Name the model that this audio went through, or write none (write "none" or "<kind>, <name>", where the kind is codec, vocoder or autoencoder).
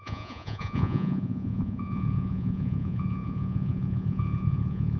vocoder, Vocos